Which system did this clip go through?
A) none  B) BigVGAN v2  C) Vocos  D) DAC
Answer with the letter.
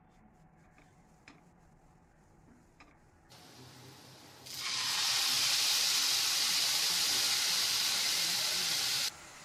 B